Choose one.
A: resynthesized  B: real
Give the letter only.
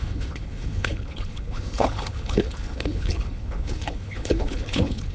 A